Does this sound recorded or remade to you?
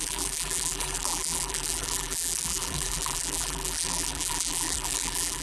remade